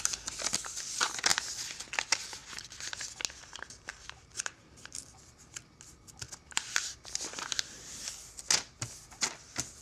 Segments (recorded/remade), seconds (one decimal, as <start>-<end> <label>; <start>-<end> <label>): 0.0-3.9 recorded; 3.9-5.0 remade; 5.0-9.8 recorded